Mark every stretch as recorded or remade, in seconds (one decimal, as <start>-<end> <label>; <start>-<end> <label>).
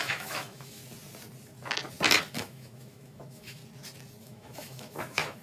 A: 0.0-0.8 remade; 0.8-2.3 recorded; 2.3-3.6 remade; 3.6-4.2 recorded; 4.2-5.4 remade